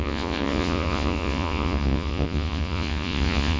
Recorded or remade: remade